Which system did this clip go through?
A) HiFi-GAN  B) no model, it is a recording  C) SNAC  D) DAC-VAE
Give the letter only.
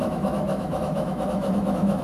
D